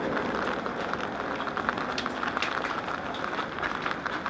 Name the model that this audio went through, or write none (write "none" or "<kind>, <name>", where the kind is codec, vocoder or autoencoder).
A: none